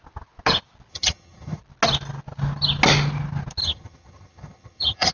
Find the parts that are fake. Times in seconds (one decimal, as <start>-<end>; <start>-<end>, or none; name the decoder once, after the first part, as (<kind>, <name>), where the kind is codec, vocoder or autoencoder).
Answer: 0.9-1.6 (vocoder, HiFi-GAN); 3.6-5.1